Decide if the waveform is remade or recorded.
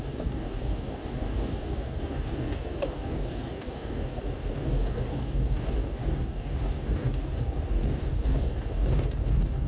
remade